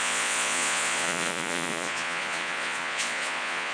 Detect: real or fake fake